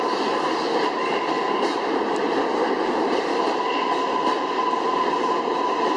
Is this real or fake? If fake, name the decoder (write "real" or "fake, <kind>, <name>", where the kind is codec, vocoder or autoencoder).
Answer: fake, vocoder, BigVGAN v2